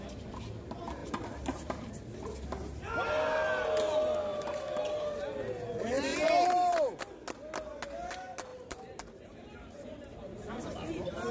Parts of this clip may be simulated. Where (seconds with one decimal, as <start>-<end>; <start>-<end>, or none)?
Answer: 1.0-1.9; 6.1-7.0; 8.5-10.5